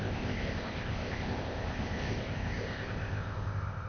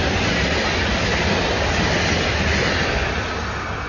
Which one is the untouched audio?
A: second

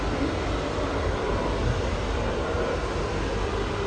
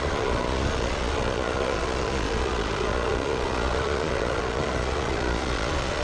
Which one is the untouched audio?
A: first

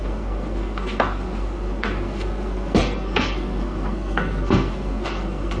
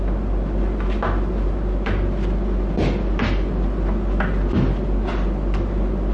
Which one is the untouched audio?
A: second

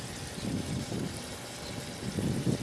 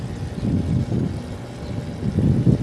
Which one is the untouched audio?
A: second